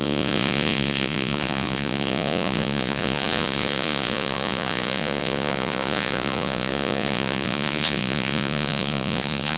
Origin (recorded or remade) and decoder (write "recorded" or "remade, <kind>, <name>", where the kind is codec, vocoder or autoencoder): remade, vocoder, Vocos